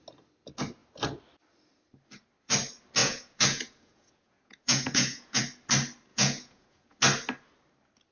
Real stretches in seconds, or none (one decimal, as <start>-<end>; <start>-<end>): 0.0-3.0; 5.4-6.1; 7.0-8.1